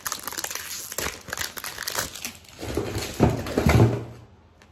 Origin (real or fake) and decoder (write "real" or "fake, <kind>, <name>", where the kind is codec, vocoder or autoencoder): real